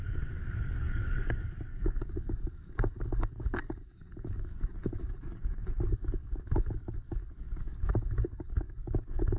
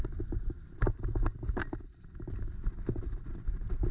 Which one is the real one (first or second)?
second